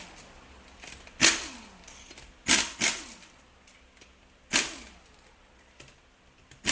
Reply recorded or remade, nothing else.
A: recorded